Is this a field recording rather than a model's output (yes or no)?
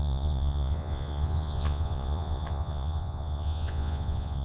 no